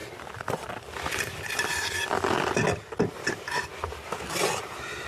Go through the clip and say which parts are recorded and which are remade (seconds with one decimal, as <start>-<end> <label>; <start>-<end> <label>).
0.0-5.1 recorded